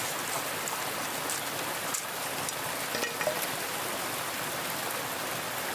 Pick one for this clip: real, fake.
real